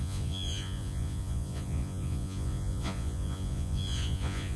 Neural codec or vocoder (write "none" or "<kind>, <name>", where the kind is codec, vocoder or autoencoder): vocoder, Vocos